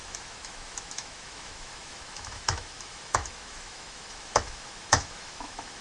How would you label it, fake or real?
fake